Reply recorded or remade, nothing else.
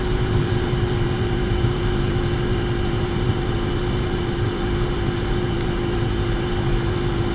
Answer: remade